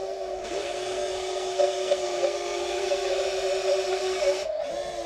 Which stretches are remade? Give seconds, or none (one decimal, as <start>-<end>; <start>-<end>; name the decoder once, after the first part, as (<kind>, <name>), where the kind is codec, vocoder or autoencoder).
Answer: 0.0-3.1 (codec, SNAC); 3.9-4.6